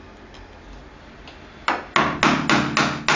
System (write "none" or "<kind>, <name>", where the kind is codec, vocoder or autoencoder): none